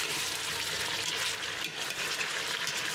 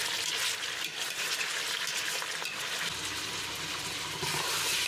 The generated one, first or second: second